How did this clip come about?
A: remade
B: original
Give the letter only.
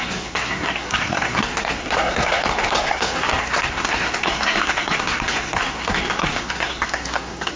A